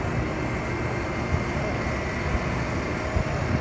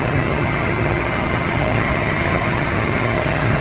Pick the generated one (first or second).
second